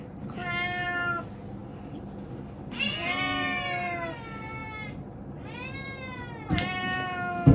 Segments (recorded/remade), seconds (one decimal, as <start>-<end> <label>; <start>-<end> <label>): 0.0-7.5 recorded

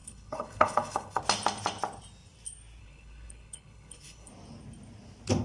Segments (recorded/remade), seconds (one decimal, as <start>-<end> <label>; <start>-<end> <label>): 0.0-1.2 remade; 1.2-2.8 recorded; 2.8-4.3 remade; 4.3-5.4 recorded

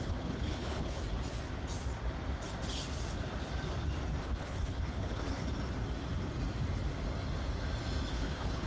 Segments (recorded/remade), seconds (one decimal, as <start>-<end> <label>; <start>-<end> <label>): 0.0-1.0 remade; 1.0-4.2 recorded; 4.2-5.4 remade; 5.4-8.1 recorded; 8.1-8.7 remade

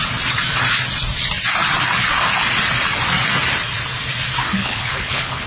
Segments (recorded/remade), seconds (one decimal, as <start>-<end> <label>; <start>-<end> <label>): 0.0-4.6 recorded; 4.6-5.5 remade

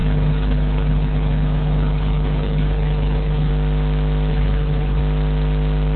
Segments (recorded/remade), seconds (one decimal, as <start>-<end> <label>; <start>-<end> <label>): 0.0-3.5 remade; 3.5-4.3 recorded; 4.3-5.0 remade; 5.0-6.0 recorded